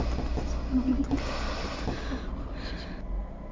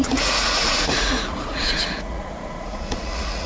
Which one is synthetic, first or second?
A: second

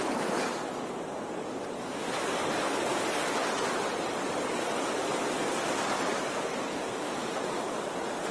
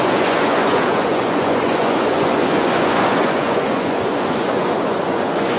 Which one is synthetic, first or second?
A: second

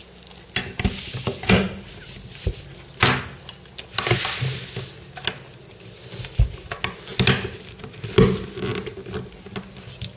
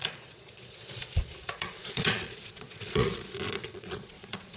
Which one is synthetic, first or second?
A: second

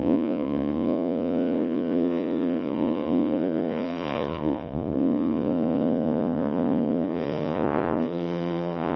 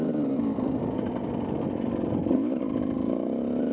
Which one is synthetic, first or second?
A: first